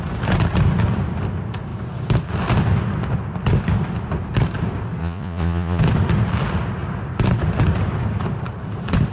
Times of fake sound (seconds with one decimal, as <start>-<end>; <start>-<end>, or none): 5.0-5.8